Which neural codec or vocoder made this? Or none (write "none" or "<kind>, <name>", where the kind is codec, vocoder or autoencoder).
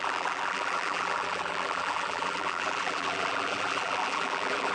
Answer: vocoder, BigVGAN v2